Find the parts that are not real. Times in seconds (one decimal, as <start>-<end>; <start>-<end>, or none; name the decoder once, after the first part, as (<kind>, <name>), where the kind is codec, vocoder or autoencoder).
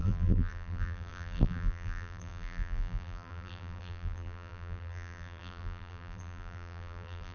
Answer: 0.0-7.3 (vocoder, BigVGAN v2)